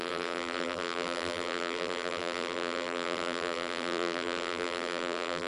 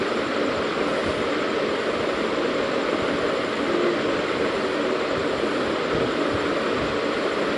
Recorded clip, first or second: second